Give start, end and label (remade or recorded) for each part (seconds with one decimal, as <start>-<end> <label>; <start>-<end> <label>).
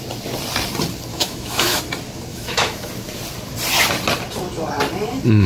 0.0-1.1 recorded; 1.1-1.8 remade; 1.8-2.3 recorded; 2.3-2.9 remade; 2.9-5.5 recorded